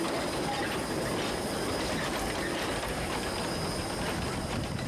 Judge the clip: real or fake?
real